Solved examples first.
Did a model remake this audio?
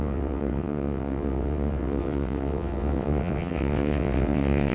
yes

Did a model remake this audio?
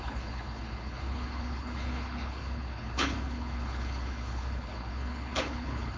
yes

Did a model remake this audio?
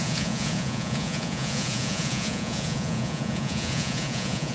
yes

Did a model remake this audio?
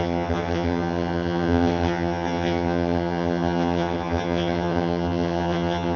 yes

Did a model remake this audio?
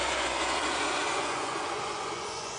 yes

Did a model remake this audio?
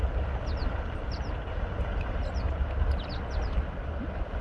no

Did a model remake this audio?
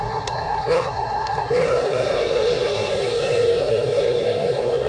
yes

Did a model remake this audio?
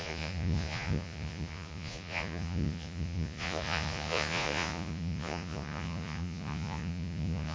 yes